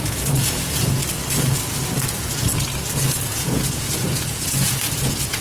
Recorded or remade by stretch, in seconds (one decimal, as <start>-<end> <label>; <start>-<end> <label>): 0.0-1.0 remade; 1.0-2.1 recorded; 2.1-2.5 remade; 2.5-3.1 recorded; 3.1-5.4 remade